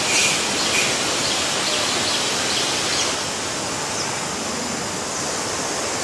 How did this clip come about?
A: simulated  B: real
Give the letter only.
B